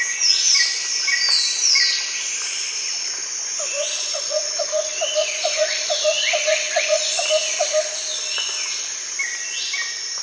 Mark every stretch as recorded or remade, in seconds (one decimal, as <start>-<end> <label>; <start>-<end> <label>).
0.0-3.2 recorded; 3.2-7.2 remade; 7.2-10.2 recorded